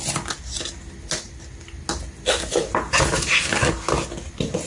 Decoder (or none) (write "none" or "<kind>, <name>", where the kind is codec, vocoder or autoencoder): none